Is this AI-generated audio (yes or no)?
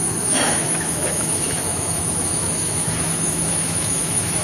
yes